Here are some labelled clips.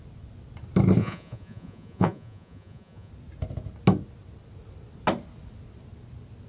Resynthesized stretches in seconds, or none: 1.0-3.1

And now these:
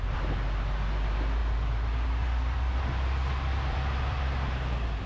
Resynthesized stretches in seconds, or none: none

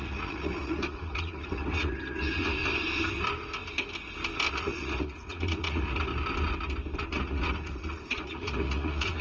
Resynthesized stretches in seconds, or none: 0.0-2.6; 4.5-6.1; 7.1-9.2

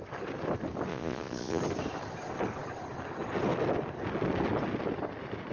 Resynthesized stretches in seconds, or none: 0.9-1.6